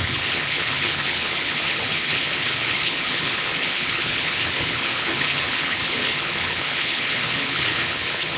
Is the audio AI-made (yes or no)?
yes